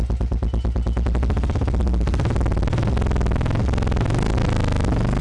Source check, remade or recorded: recorded